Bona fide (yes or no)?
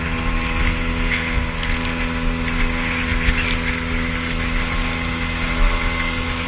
yes